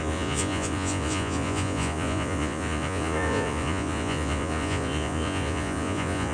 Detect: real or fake fake